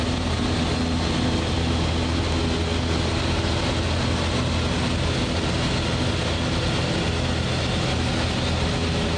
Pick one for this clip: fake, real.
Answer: real